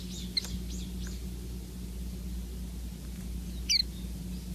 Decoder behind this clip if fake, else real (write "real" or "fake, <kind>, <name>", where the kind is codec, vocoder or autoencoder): real